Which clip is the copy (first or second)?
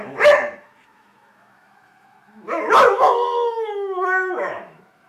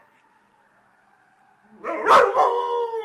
first